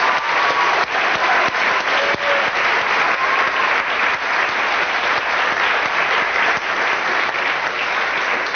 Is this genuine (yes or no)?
yes